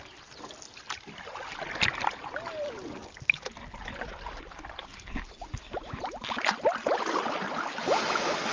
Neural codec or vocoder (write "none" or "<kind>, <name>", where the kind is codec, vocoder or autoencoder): none